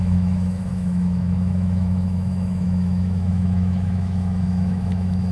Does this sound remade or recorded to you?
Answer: remade